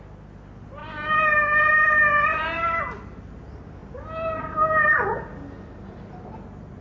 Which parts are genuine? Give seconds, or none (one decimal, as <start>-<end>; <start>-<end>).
0.0-6.8